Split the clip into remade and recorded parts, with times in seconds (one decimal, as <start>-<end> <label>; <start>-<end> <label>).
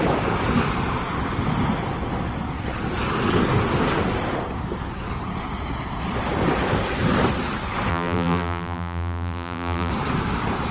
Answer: 0.0-7.9 recorded; 7.9-9.9 remade; 9.9-10.7 recorded